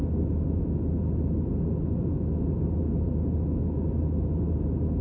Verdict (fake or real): real